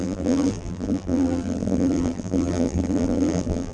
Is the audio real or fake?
fake